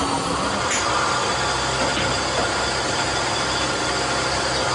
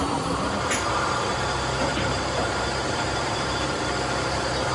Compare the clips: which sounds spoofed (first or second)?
second